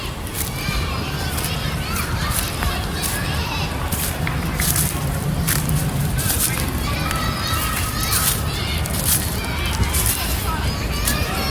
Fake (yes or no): yes